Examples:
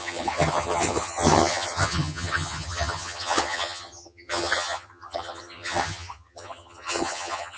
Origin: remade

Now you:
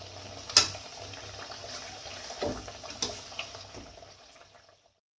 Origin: recorded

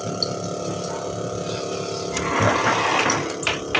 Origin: recorded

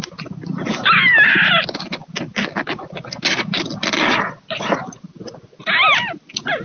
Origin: recorded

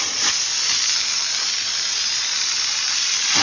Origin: recorded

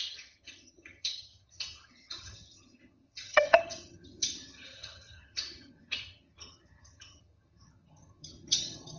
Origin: remade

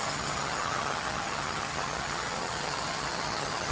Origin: remade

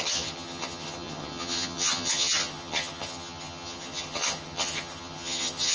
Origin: remade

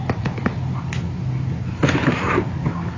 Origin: recorded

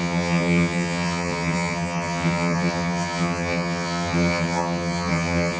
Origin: remade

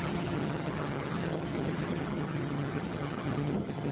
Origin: remade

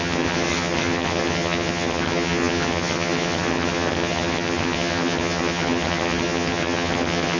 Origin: remade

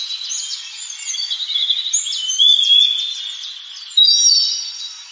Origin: recorded